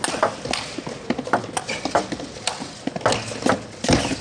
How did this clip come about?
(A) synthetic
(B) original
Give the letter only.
B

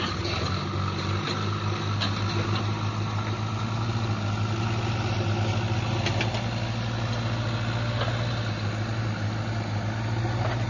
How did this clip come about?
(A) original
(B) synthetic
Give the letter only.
A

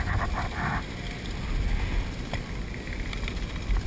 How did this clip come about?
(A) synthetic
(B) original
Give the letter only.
B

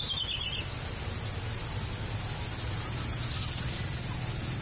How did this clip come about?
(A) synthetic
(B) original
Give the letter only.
B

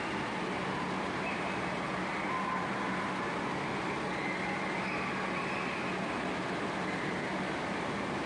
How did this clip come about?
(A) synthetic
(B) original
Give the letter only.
B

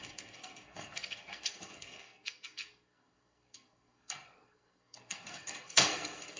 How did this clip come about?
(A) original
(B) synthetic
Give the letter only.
B